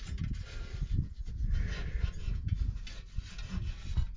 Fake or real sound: real